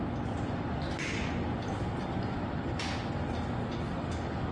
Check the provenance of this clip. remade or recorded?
recorded